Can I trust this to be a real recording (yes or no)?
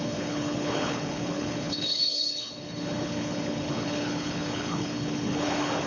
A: no